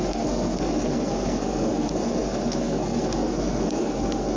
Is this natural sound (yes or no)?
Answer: no